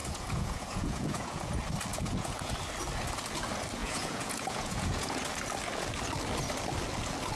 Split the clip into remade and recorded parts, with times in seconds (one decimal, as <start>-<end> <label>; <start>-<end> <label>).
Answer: 0.0-1.5 remade; 1.5-1.9 recorded; 1.9-2.5 remade; 2.5-3.8 recorded; 3.8-5.2 remade; 5.2-7.4 recorded